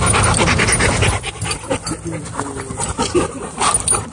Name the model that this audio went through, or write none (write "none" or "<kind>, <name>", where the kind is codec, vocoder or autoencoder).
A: none